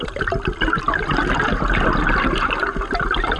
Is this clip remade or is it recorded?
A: recorded